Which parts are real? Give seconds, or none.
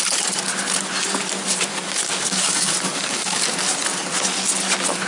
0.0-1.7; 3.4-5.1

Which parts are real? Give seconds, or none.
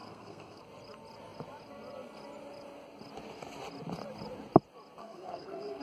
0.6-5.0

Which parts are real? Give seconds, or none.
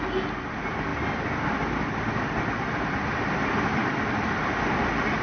0.0-5.2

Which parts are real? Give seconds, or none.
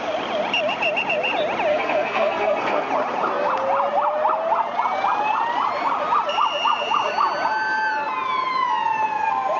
0.0-1.7; 2.9-9.6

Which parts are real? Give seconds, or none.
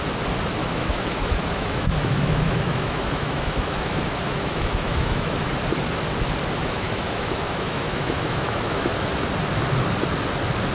0.0-0.6; 5.5-6.6; 8.9-10.7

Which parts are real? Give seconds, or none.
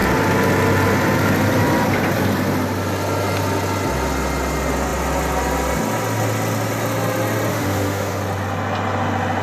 0.0-7.5; 8.2-9.4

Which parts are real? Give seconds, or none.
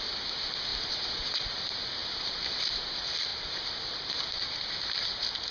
0.0-5.5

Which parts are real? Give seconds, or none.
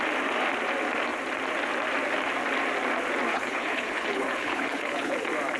0.0-3.3; 5.1-5.6